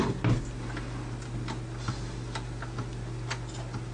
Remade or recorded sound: recorded